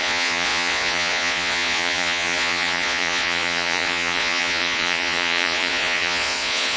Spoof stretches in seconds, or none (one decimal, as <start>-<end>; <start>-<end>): 0.0-6.8